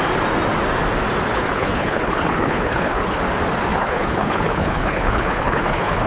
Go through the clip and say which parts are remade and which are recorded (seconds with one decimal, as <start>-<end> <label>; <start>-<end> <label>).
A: 0.0-1.3 recorded; 1.3-3.2 remade; 3.2-3.7 recorded; 3.7-6.1 remade